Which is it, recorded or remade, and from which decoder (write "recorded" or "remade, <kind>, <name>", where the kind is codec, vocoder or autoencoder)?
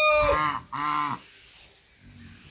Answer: recorded